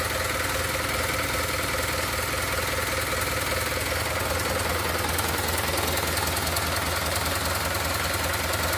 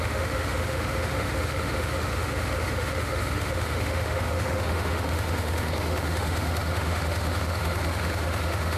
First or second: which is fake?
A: second